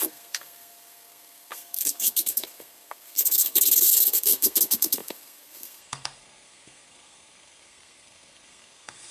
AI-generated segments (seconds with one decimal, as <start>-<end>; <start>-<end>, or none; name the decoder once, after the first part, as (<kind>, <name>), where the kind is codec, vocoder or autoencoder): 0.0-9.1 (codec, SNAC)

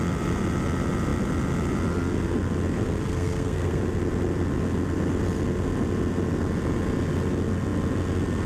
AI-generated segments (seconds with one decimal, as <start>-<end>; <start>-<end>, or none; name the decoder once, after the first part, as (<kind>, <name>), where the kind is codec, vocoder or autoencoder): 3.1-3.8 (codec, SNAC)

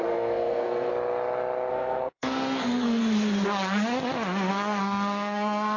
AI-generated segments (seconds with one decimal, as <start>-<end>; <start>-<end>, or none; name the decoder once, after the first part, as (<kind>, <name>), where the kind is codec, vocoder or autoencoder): 0.0-0.9 (codec, SNAC); 1.7-3.0; 4.5-5.8

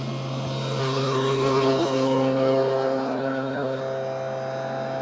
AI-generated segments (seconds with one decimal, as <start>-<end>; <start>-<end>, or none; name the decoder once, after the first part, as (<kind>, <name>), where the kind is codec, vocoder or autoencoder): 0.8-3.8 (codec, SNAC)